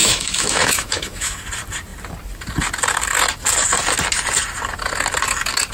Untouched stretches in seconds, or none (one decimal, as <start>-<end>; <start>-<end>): 1.4-5.7